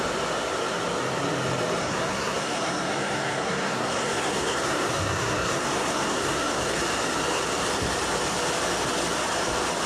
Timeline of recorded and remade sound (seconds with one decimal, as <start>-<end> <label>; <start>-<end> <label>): 0.0-1.8 recorded; 1.8-6.8 remade; 6.8-9.9 recorded